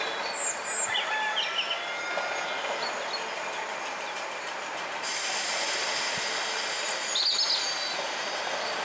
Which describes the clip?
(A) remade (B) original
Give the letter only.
B